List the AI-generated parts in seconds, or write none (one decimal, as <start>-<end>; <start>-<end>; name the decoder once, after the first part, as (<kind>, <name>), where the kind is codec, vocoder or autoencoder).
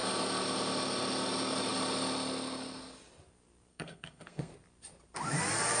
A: 3.7-4.5 (codec, SNAC)